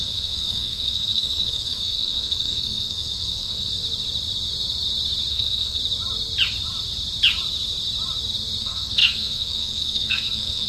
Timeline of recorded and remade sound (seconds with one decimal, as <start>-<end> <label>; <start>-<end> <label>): 0.0-3.8 remade; 3.8-5.3 recorded; 5.3-5.8 remade; 5.8-8.6 recorded; 8.6-10.7 remade